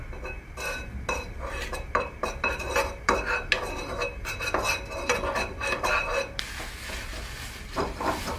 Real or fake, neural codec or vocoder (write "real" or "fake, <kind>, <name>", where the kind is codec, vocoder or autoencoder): real